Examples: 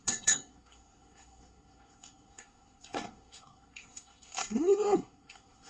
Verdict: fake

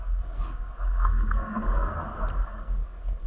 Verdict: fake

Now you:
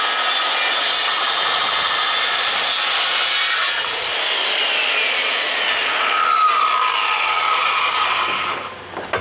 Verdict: real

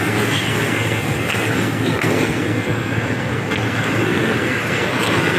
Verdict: fake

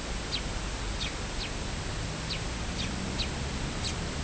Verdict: real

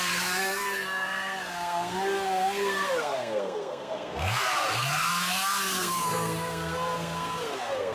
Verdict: fake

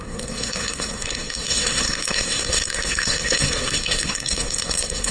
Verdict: fake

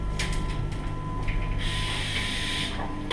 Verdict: real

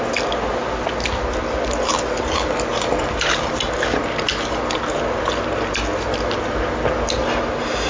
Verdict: real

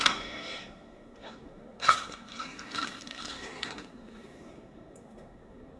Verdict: fake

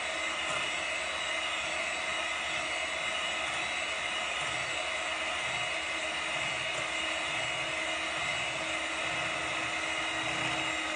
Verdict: real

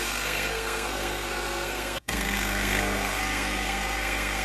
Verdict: fake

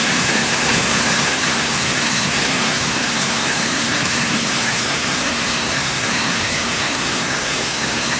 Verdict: fake